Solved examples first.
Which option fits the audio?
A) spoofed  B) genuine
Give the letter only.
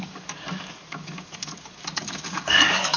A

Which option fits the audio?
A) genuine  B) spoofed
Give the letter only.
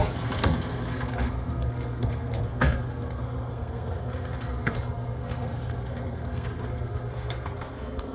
B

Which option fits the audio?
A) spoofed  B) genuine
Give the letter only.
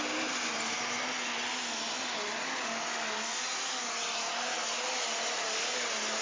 B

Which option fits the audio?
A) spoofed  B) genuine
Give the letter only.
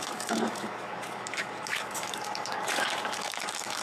A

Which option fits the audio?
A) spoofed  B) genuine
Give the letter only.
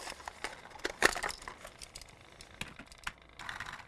B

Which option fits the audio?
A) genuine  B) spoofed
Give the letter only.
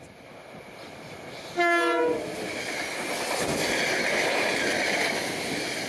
A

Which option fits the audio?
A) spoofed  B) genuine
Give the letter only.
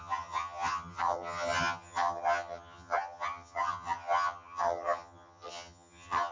A